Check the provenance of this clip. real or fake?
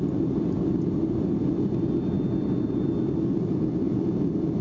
real